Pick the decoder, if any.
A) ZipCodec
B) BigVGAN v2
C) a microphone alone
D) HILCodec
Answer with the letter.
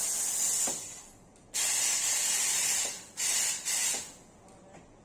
B